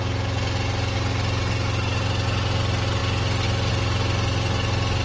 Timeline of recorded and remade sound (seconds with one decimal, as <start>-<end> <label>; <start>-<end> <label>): 0.0-5.0 recorded